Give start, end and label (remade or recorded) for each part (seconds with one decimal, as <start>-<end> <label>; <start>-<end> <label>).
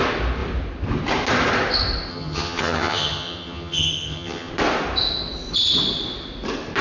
0.0-2.1 recorded; 2.1-4.5 remade; 4.5-6.8 recorded